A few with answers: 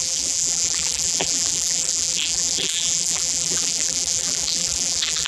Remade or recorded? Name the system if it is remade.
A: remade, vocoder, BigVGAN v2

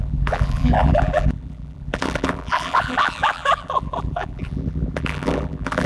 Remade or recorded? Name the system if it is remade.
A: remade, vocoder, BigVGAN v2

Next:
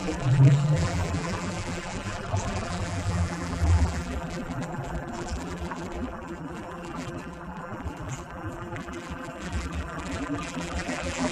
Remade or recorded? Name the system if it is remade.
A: remade, vocoder, BigVGAN v2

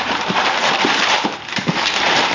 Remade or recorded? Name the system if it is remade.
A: remade, vocoder, BigVGAN v2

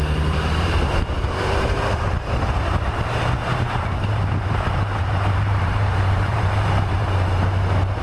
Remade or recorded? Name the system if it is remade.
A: remade, vocoder, BigVGAN v2